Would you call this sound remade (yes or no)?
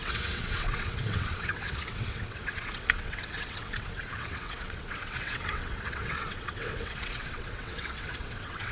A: yes